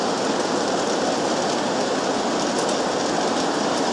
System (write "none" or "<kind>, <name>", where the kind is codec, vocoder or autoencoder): none